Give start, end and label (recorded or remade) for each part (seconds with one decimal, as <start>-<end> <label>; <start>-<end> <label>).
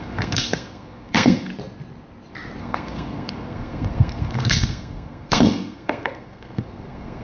0.0-1.5 remade; 1.5-2.6 recorded; 2.6-7.2 remade